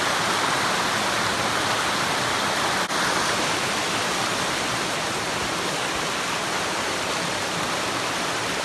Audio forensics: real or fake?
real